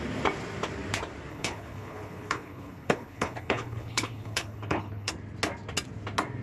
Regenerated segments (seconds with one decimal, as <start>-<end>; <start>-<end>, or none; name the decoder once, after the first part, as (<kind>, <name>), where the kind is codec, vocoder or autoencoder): 1.3-5.1 (codec, HILCodec)